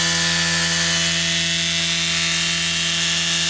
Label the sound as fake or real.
real